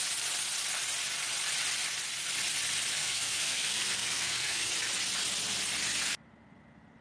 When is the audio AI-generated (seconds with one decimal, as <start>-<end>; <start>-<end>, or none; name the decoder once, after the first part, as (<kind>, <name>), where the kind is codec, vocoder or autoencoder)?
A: 2.9-4.7 (codec, SNAC)